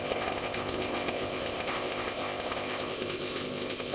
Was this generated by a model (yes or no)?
yes